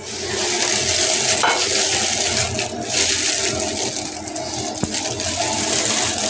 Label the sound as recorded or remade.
recorded